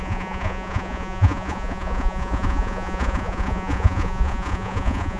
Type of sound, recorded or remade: remade